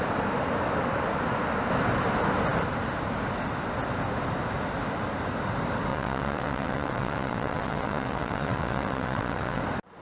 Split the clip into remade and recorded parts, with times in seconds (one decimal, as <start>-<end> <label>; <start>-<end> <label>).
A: 0.0-5.9 recorded; 5.9-9.6 remade; 9.6-10.0 recorded